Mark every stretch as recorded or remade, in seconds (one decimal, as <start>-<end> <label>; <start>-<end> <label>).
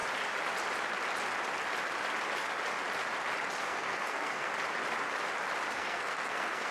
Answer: 0.0-3.6 recorded; 3.6-4.5 remade; 4.5-5.7 recorded; 5.7-6.7 remade